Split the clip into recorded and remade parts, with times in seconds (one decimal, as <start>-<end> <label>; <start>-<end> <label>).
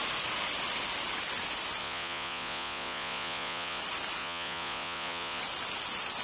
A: 0.0-1.8 recorded; 1.8-3.8 remade; 3.8-4.2 recorded; 4.2-5.4 remade; 5.4-6.2 recorded